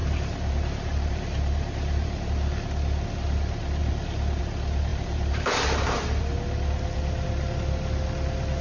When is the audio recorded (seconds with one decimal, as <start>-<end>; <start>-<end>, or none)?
2.3-4.9; 6.2-8.6